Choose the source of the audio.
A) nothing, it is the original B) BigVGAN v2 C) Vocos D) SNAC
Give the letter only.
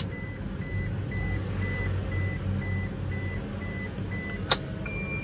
A